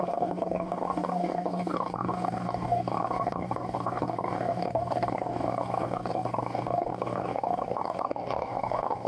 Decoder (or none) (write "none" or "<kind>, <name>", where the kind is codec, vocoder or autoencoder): codec, DAC